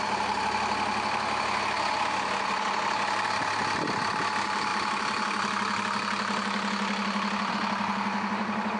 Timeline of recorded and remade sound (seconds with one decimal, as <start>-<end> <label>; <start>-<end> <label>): 0.0-8.8 recorded